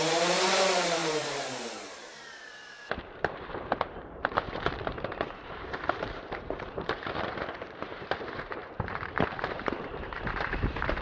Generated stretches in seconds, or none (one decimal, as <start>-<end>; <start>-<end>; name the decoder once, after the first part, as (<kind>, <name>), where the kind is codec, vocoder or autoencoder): 0.0-11.0 (vocoder, BigVGAN v2)